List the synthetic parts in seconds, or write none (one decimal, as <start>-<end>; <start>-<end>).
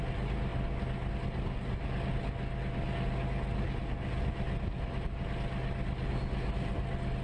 none